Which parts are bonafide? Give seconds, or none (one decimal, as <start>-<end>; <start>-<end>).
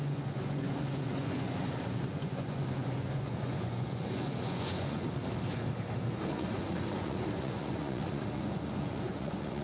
5.2-6.3